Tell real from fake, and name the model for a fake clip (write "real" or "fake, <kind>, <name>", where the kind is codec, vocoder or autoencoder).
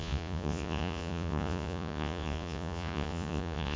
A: fake, vocoder, Vocos